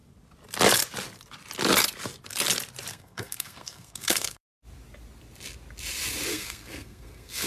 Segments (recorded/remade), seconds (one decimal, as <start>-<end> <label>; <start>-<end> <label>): 0.0-2.9 recorded; 2.9-4.6 remade; 4.6-6.3 recorded; 6.3-7.5 remade